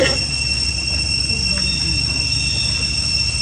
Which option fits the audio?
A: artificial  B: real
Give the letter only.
B